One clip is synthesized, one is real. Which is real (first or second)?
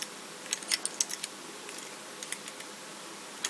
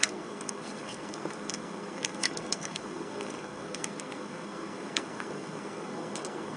first